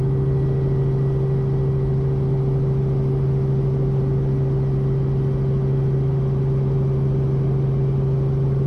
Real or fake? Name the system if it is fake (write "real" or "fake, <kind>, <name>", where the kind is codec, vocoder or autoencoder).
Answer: real